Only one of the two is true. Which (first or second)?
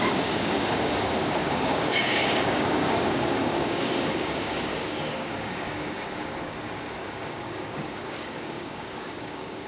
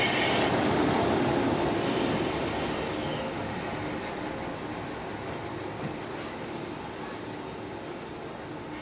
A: second